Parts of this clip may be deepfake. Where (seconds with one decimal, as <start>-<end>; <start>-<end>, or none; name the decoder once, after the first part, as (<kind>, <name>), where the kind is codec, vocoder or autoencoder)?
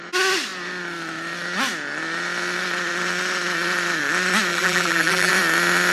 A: 4.5-5.3 (vocoder, BigVGAN v2)